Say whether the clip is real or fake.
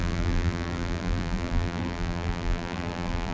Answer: fake